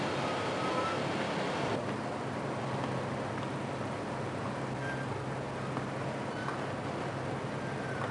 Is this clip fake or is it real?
real